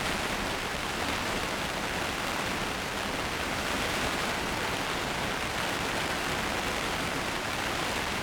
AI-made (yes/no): no